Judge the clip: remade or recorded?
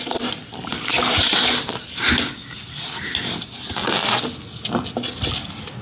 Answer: recorded